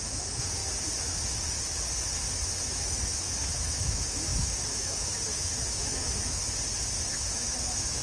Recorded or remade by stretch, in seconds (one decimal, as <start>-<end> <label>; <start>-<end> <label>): 0.0-0.6 remade; 0.6-2.6 recorded; 2.6-6.4 remade; 6.4-7.1 recorded; 7.1-8.0 remade